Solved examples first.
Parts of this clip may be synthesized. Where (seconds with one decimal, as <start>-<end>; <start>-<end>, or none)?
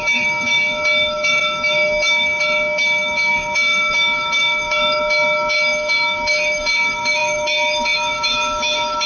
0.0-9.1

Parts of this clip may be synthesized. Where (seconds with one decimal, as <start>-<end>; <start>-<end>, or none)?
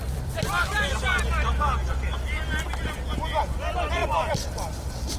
0.0-0.9; 3.4-5.2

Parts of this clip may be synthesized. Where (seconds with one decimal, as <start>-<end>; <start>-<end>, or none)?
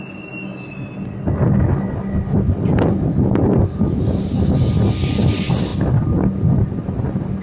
none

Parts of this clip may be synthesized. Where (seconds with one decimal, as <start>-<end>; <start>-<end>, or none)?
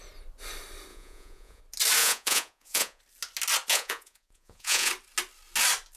0.9-1.6; 2.0-3.0; 3.7-4.9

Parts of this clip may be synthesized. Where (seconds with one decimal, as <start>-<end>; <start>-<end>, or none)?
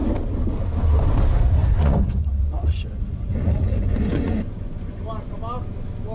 1.6-5.0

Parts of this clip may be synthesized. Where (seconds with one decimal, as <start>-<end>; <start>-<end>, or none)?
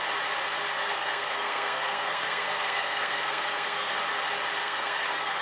0.8-4.0; 4.6-5.4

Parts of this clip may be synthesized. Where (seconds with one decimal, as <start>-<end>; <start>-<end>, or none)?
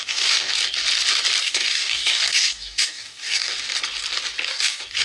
0.0-0.5; 1.4-3.5; 4.5-5.0